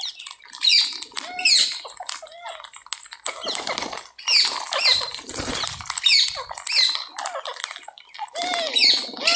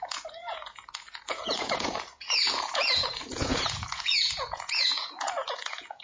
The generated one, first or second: second